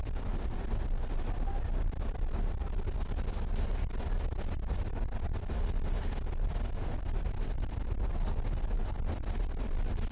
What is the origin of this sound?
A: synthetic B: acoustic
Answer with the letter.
B